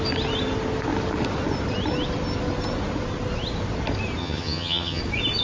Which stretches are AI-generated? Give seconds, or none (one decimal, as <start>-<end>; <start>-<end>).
4.2-5.0